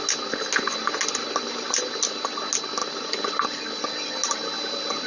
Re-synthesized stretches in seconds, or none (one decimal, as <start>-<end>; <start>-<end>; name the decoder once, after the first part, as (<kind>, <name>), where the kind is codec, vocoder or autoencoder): none